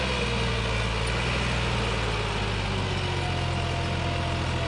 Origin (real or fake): real